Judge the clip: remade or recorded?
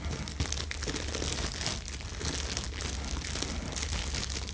recorded